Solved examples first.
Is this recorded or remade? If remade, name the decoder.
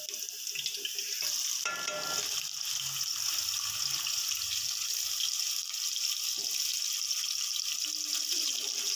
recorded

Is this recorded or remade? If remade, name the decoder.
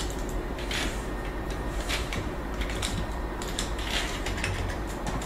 remade, vocoder, BigVGAN v2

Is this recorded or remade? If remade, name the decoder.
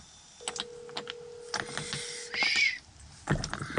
recorded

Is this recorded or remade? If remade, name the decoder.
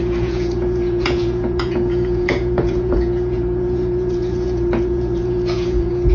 remade, vocoder, Vocos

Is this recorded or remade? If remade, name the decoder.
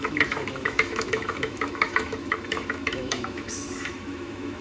remade, autoencoder, DAC-VAE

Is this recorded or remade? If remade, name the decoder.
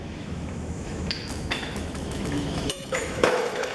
remade, autoencoder, DAC-VAE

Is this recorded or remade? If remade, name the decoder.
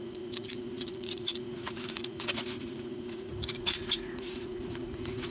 remade, vocoder, Vocos